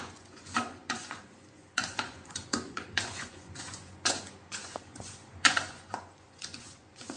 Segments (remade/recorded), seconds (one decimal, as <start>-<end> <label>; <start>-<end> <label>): 0.0-7.2 remade